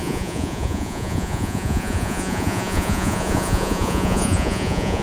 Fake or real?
fake